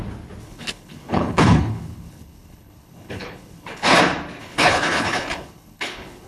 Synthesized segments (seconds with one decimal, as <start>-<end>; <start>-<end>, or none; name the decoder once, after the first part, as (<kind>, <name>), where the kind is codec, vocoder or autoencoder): 0.4-4.0 (codec, HILCodec); 4.4-6.3